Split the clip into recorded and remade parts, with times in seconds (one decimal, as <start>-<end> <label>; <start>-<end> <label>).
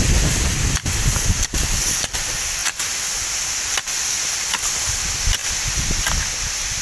0.0-6.8 recorded